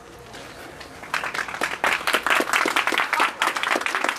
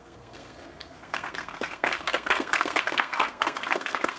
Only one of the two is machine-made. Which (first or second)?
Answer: second